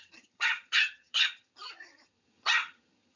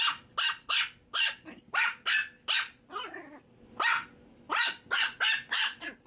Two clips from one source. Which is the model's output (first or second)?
first